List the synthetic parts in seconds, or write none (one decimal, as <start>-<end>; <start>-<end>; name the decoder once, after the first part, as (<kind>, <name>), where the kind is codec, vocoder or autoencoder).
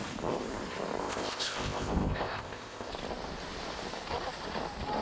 1.0-2.9 (codec, ZipCodec)